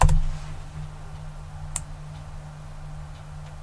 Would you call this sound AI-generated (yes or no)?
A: no